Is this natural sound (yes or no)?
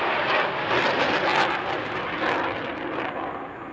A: yes